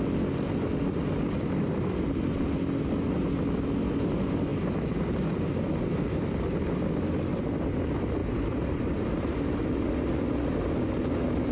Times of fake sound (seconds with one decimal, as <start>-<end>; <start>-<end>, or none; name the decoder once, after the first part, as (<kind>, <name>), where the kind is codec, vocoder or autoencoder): 8.2-9.7 (vocoder, BigVGAN v2)